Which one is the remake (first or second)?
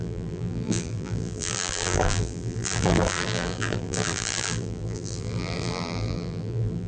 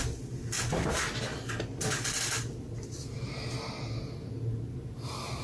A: first